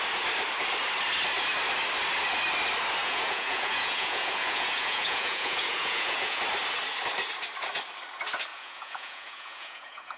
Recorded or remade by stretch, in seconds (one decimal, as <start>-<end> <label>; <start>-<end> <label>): 0.0-3.0 recorded; 3.0-6.4 remade; 6.4-8.5 recorded; 8.5-10.2 remade